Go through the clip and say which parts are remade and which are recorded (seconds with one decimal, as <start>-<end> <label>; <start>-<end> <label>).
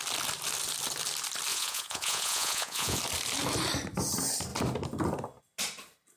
0.0-1.5 recorded; 1.5-3.0 remade; 3.0-6.2 recorded